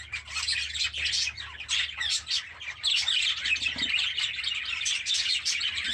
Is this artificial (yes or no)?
no